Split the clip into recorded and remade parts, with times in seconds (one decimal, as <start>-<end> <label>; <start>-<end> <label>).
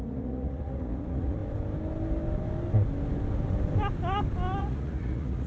0.0-1.4 remade; 1.4-4.6 recorded; 4.6-5.5 remade